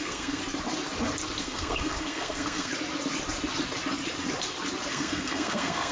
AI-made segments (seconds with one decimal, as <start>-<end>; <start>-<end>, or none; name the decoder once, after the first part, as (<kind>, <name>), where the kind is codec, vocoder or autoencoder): 0.0-0.4 (codec, SNAC); 1.4-2.7; 4.9-5.9